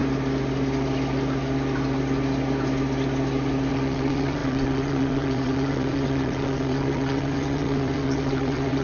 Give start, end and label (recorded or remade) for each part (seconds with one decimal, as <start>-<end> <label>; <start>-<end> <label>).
0.0-3.7 recorded; 3.7-8.8 remade